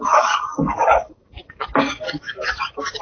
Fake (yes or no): yes